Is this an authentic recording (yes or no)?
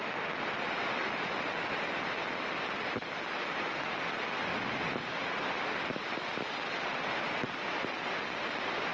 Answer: yes